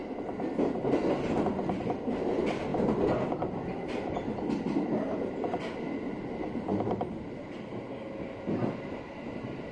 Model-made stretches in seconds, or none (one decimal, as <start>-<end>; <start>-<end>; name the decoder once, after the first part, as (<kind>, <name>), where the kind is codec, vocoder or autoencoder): none